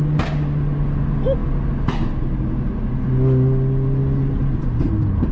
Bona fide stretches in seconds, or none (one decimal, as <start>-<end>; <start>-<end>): 0.0-5.3